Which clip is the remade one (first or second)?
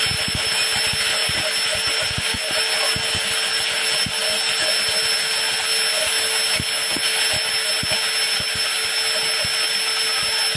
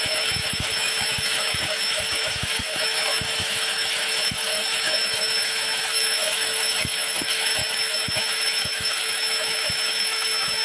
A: second